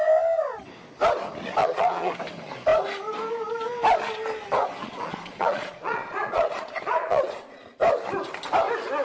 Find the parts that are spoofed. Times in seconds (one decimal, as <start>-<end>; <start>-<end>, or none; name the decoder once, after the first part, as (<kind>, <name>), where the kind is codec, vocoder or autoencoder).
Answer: 1.6-2.1 (vocoder, Vocos); 4.8-7.6